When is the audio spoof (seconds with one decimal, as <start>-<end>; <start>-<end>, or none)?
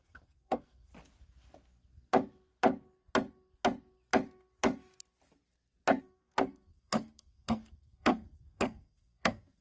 0.0-0.9; 6.0-9.6